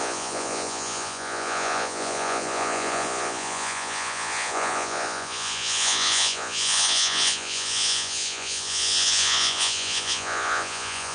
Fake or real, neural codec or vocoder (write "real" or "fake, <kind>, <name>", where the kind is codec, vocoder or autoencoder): fake, vocoder, Vocos